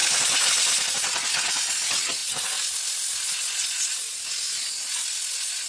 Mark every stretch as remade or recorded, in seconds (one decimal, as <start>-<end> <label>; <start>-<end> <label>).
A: 0.0-5.7 recorded